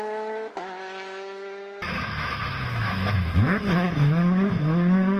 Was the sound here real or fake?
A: fake